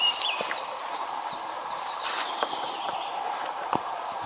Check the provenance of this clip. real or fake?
fake